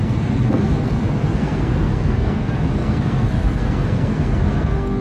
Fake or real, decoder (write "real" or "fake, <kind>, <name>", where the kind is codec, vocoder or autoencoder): fake, codec, SNAC